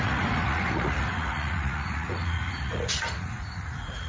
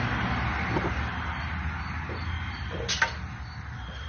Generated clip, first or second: first